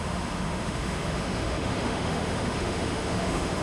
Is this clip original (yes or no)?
no